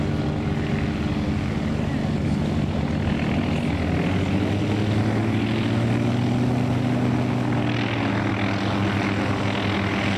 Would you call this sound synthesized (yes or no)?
no